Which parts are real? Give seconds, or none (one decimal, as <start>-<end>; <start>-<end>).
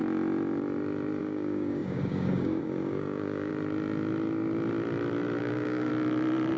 0.0-1.2; 3.5-5.4; 5.9-6.6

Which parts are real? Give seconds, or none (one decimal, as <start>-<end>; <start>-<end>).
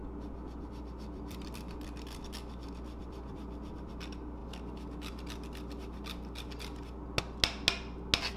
3.9-8.4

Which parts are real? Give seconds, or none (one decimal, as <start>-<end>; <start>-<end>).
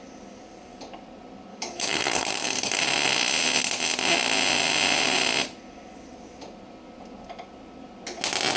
0.0-1.5; 2.8-8.6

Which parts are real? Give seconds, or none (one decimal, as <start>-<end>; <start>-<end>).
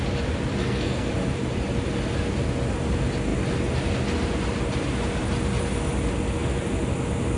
0.0-0.6; 1.1-7.4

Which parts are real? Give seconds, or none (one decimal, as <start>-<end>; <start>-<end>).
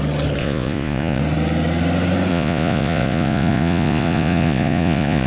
0.0-0.4; 1.2-2.3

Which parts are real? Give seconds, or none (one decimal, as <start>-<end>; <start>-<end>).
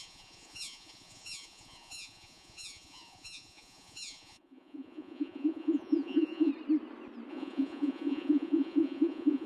6.5-7.3